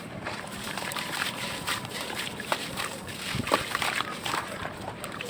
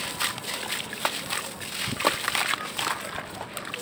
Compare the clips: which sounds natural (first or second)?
second